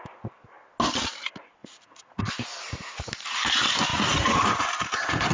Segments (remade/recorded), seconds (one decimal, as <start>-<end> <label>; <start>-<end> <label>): 0.0-1.6 recorded; 1.6-2.2 remade; 2.2-3.9 recorded; 3.9-5.3 remade